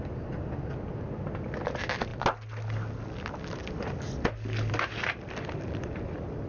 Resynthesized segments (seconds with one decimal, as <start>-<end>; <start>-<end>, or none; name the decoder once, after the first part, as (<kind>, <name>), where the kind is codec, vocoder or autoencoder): none